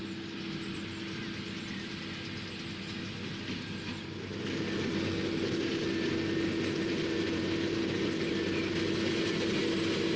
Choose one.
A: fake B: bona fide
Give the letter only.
B